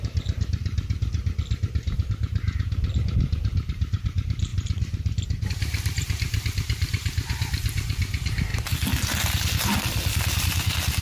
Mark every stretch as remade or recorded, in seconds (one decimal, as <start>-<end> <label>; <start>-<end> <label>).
0.0-0.6 remade; 0.6-2.1 recorded; 2.1-8.5 remade; 8.5-11.0 recorded